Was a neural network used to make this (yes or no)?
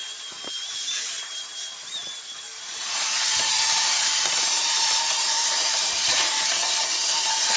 yes